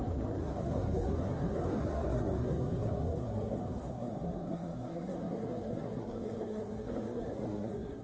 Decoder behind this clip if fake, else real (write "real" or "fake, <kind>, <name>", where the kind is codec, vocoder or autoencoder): fake, codec, SNAC